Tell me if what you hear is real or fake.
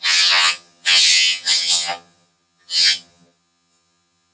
fake